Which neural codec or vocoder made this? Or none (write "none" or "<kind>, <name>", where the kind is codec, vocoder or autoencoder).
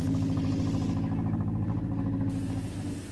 none